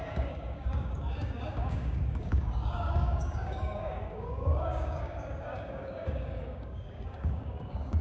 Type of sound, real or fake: fake